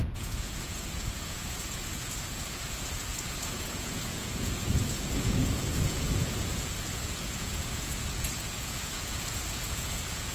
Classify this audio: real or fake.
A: fake